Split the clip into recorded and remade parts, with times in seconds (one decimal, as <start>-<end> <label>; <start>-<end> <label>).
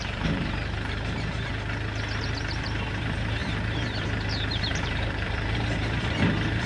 0.0-1.5 remade; 1.5-2.2 recorded; 2.2-6.7 remade